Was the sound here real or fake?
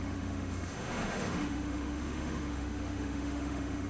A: fake